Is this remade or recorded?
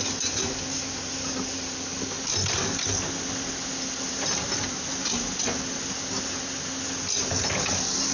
recorded